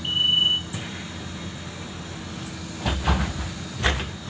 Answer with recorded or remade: recorded